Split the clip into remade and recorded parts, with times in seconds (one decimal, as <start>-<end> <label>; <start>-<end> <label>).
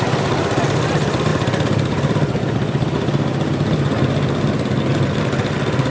0.0-5.9 recorded